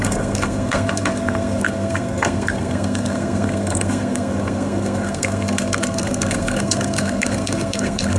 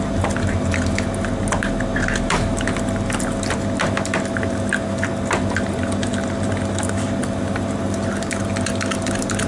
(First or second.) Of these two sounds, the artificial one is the first